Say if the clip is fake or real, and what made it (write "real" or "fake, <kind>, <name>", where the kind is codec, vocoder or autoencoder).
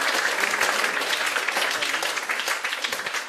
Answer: real